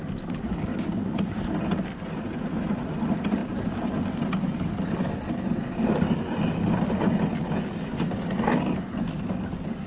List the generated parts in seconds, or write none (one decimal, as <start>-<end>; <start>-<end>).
none